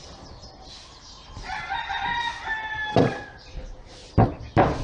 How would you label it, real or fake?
real